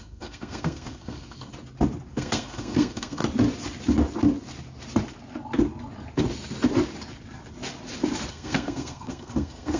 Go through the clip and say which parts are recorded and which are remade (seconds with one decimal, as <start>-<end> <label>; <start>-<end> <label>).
0.0-1.5 remade; 1.5-2.1 recorded; 2.1-3.2 remade; 3.2-8.3 recorded; 8.3-9.8 remade